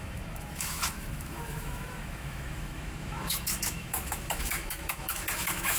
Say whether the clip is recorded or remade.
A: remade